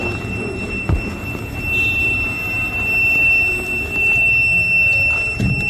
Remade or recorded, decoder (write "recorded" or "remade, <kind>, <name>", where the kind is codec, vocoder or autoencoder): recorded